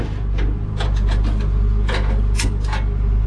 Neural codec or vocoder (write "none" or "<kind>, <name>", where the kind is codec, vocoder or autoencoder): none